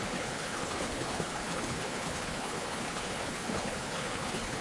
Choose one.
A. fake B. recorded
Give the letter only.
A